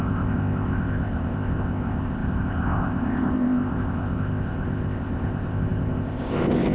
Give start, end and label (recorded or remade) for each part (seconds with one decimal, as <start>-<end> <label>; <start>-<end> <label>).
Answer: 0.0-6.7 remade